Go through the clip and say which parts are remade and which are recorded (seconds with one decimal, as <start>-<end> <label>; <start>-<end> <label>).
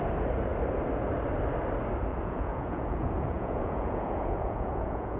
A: 0.0-2.1 recorded; 2.1-5.2 remade